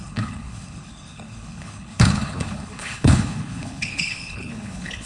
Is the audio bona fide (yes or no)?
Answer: no